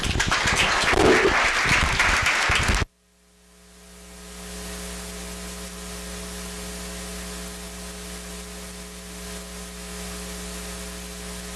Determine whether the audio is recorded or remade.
recorded